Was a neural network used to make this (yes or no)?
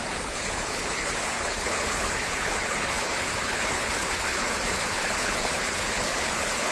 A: yes